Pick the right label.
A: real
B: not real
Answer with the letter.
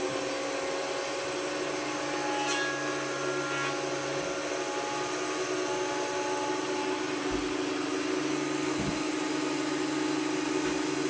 A